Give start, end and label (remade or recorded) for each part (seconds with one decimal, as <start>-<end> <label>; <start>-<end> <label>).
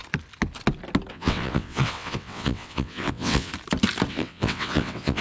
0.0-1.1 recorded; 1.1-3.5 remade; 3.5-4.1 recorded; 4.1-5.2 remade